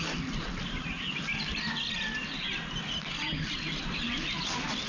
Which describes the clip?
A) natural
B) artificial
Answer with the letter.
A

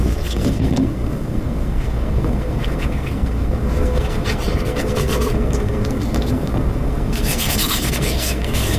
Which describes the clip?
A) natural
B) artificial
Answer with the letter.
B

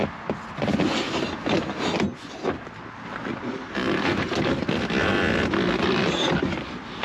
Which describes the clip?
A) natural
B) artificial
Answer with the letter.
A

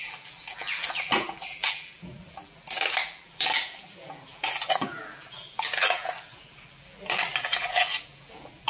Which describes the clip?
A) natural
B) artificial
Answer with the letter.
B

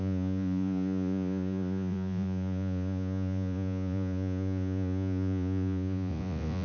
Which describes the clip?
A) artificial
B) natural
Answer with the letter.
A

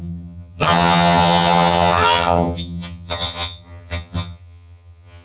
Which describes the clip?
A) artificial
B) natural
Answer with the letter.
A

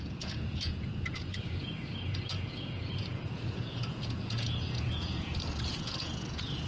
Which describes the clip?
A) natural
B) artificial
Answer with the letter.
B